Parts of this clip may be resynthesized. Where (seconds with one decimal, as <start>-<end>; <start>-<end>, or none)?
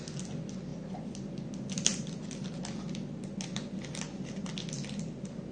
none